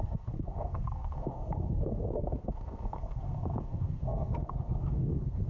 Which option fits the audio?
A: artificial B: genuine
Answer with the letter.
A